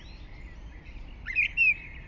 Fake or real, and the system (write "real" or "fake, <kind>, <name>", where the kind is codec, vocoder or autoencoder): real